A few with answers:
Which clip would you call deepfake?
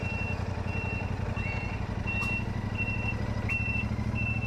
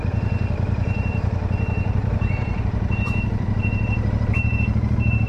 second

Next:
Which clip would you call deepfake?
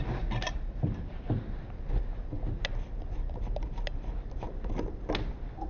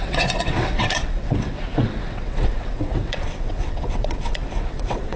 second